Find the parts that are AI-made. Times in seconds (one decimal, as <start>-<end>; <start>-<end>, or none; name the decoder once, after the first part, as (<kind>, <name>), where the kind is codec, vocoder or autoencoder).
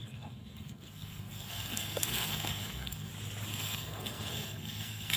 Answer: 0.0-3.1 (codec, SNAC); 3.5-5.2